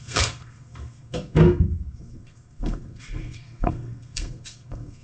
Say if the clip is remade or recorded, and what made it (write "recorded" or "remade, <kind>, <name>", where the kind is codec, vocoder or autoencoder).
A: remade, codec, SNAC